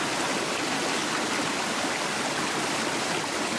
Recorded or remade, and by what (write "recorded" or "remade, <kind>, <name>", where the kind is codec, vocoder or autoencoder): recorded